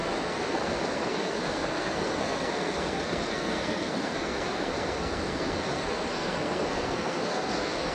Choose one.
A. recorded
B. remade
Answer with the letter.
B